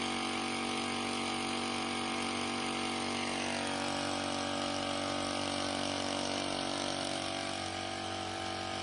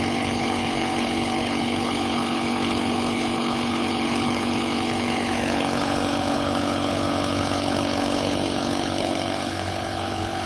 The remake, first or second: second